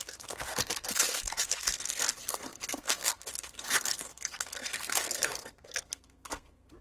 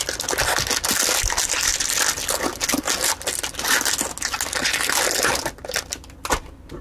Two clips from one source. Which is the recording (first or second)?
second